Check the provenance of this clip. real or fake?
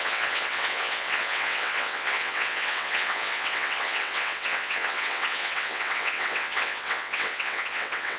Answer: fake